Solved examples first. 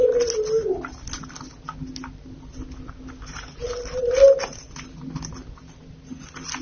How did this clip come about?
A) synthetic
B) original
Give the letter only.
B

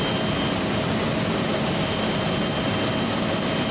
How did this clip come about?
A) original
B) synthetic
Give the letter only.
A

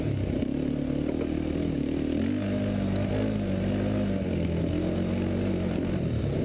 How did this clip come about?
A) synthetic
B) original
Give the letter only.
B